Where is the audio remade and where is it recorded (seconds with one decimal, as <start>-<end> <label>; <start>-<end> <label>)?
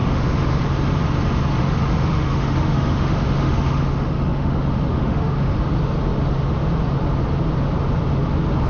0.0-0.6 remade; 0.6-1.6 recorded; 1.6-5.6 remade; 5.6-8.7 recorded